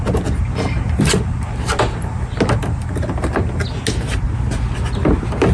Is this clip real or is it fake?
real